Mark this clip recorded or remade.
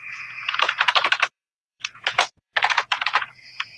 remade